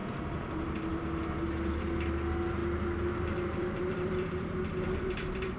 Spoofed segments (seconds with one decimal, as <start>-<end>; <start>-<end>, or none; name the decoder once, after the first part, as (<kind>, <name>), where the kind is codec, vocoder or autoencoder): 0.0-1.0 (vocoder, BigVGAN v2); 3.6-5.6